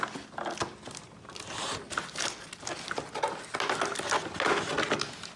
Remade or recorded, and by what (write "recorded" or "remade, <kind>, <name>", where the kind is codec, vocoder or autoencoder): recorded